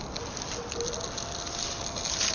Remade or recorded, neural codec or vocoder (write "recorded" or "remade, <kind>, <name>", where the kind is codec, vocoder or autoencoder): recorded